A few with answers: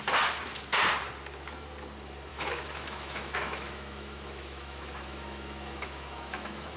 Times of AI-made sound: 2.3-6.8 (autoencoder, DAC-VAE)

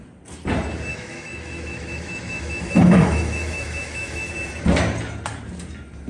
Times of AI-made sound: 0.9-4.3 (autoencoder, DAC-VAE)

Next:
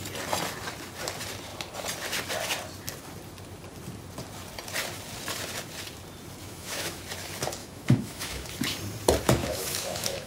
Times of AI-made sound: 6.4-7.0 (autoencoder, DAC-VAE); 7.6-8.5; 9.4-10.3

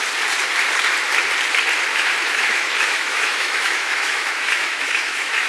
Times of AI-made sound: 1.9-5.5 (autoencoder, DAC-VAE)

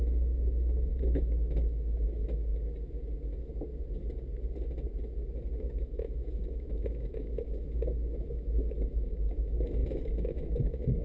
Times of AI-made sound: 0.0-2.5 (autoencoder, DAC-VAE); 5.6-11.0